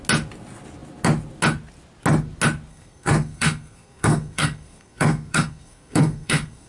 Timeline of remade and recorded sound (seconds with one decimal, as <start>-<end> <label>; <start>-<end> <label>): 0.0-2.7 recorded; 2.7-6.7 remade